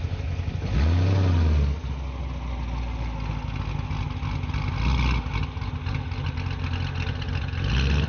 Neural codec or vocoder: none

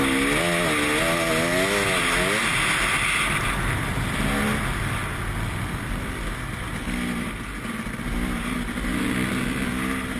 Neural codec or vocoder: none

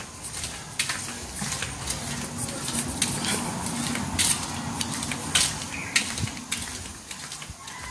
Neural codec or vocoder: none